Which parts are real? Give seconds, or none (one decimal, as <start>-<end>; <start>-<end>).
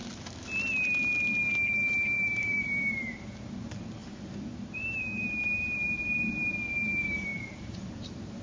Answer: 0.0-1.7